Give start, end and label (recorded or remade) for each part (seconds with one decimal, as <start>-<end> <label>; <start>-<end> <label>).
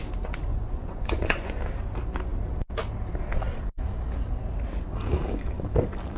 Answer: 0.0-0.5 recorded; 0.5-1.6 remade; 1.6-6.2 recorded